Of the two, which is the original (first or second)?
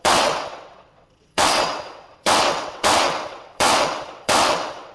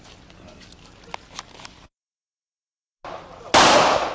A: second